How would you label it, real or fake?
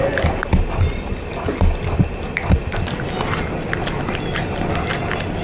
real